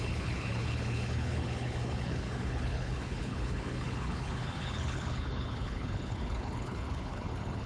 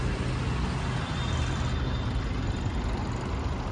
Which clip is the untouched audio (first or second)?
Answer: second